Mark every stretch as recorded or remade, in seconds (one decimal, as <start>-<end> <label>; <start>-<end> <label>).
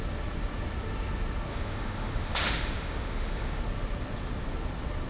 0.0-1.5 recorded; 1.5-3.6 remade; 3.6-5.1 recorded